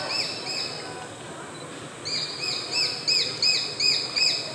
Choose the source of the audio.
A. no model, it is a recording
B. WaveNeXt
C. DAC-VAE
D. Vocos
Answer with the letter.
A